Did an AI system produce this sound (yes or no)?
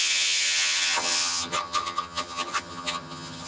yes